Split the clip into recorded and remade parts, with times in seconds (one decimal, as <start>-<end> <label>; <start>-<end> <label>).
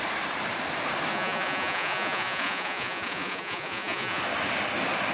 0.0-1.1 recorded; 1.1-4.2 remade; 4.2-5.1 recorded